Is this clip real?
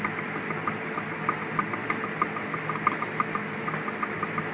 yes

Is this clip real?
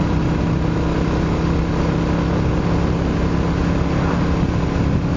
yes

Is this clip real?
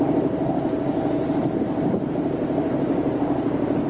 yes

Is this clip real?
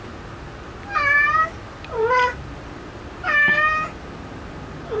yes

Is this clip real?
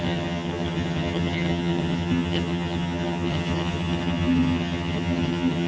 no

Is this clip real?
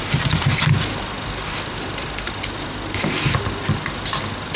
yes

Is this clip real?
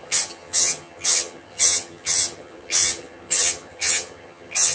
no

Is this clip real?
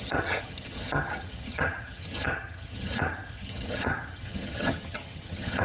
no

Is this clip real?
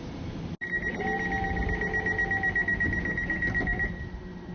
yes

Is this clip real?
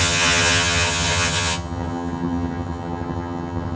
no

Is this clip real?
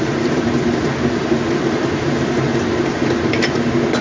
yes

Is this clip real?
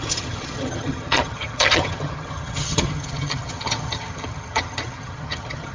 no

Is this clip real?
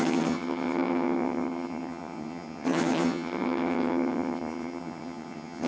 no